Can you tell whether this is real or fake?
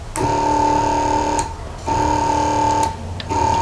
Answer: real